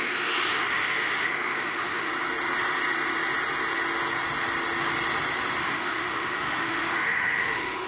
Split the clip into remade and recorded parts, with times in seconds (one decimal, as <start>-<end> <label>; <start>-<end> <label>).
0.0-2.1 remade; 2.1-5.6 recorded; 5.6-7.9 remade